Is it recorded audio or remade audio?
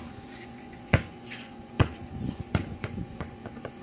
remade